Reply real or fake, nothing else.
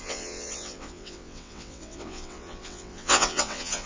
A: fake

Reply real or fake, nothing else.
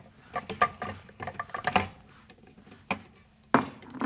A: real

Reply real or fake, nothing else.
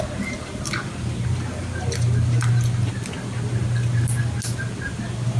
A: real